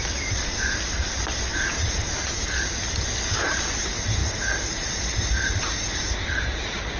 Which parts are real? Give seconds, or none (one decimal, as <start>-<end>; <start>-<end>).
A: 0.0-7.0